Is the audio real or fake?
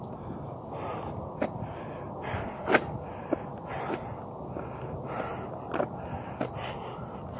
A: real